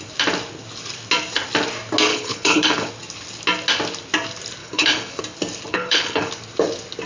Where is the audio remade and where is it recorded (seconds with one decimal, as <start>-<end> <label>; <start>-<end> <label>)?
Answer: 0.0-2.1 recorded; 2.1-2.9 remade; 2.9-4.6 recorded; 4.6-5.2 remade; 5.2-5.7 recorded; 5.7-6.3 remade; 6.3-7.1 recorded